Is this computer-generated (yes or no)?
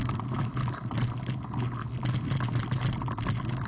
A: no